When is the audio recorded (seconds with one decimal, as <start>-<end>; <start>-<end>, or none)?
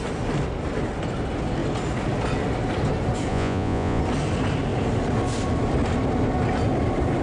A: 0.0-3.3; 4.0-7.2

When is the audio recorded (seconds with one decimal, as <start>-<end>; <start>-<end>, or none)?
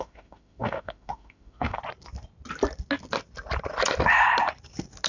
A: 1.8-5.1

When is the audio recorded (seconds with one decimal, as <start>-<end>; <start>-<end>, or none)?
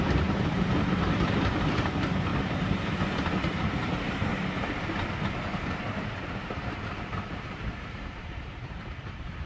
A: 4.3-5.9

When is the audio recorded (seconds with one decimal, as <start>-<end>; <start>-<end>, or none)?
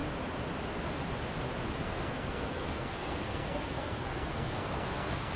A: 0.0-1.8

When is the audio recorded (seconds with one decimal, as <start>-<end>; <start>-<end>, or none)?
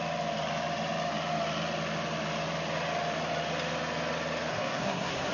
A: 0.0-4.5